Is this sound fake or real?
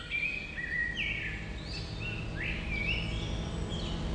real